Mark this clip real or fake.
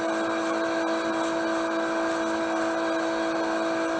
real